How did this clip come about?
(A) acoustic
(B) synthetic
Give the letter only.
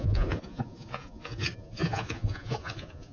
B